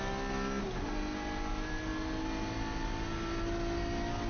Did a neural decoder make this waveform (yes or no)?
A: no